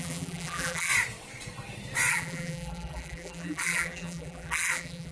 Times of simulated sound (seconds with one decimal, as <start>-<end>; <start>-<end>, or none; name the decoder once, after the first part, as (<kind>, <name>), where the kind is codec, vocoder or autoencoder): 0.0-0.9 (vocoder, BigVGAN v2); 2.1-5.1